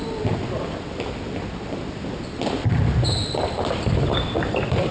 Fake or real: fake